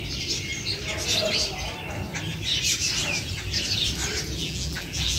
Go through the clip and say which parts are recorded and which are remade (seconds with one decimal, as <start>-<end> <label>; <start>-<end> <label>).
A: 0.0-4.4 recorded; 4.4-5.2 remade